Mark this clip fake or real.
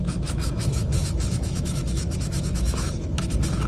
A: fake